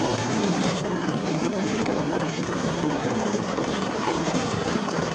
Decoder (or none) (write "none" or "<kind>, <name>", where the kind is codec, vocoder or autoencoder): codec, SNAC